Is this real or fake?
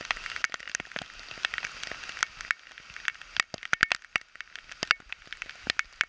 real